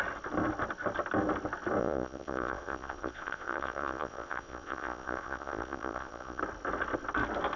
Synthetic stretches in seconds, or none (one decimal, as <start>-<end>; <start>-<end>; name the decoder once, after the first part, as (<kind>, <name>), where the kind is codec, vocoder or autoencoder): 1.8-6.4 (vocoder, Vocos)